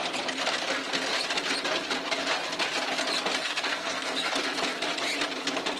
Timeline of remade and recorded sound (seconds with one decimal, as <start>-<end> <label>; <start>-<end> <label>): 0.0-3.4 recorded; 3.4-4.3 remade; 4.3-5.8 recorded